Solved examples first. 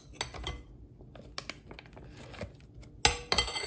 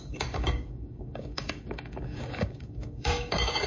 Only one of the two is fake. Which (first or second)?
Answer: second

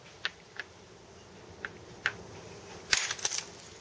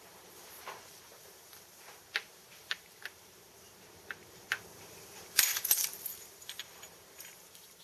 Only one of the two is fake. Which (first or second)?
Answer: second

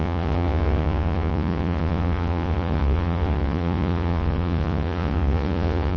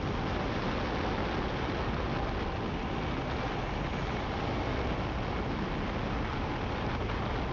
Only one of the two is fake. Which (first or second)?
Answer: first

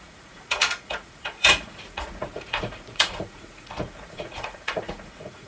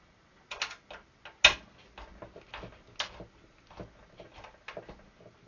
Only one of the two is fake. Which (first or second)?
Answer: first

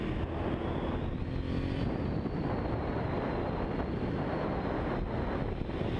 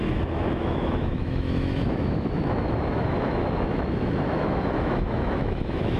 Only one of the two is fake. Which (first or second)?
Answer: second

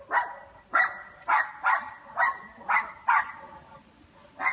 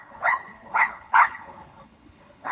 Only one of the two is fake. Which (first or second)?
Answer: second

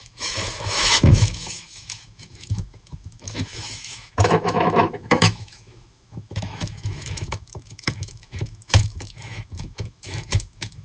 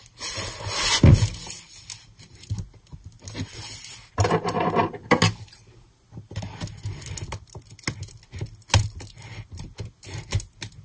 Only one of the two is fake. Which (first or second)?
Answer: first